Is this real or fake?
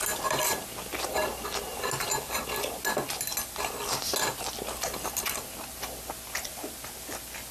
real